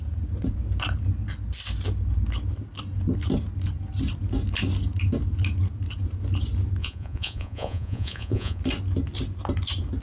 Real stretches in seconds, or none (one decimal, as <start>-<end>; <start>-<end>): 0.0-6.8; 8.6-10.0